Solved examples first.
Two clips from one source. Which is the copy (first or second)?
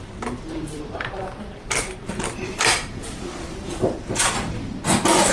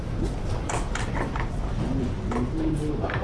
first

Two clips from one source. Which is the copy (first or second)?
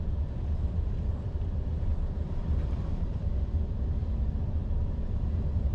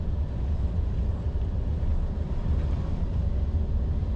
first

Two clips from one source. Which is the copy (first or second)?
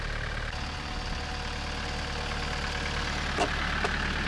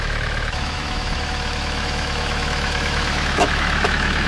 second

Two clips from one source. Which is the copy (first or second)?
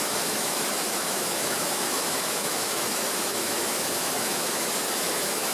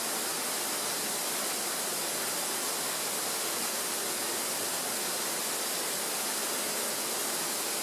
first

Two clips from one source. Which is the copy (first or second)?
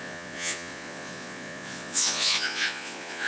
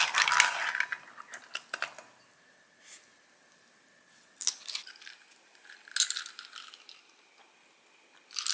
first